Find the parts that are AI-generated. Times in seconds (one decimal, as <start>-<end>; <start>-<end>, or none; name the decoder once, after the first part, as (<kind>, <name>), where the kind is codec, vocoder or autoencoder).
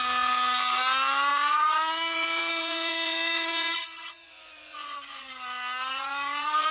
1.3-5.3 (vocoder, Vocos); 5.9-6.7